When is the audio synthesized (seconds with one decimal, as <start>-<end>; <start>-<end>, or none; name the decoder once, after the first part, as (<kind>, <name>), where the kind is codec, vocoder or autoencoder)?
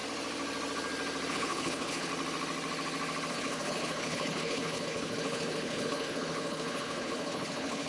1.3-2.1 (codec, HILCodec); 3.3-7.9